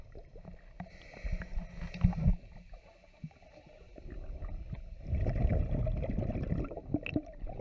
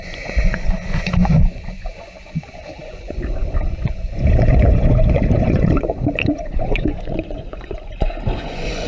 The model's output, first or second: second